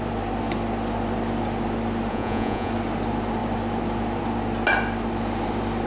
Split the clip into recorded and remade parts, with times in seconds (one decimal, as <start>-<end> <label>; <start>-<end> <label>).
0.0-2.1 recorded; 2.1-2.7 remade; 2.7-5.9 recorded